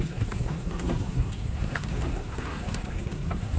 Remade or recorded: remade